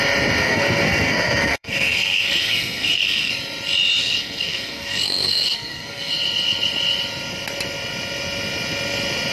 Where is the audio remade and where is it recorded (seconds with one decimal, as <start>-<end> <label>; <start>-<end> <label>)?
0.0-0.4 recorded; 0.4-3.3 remade; 3.3-4.0 recorded; 4.0-6.1 remade; 6.1-9.3 recorded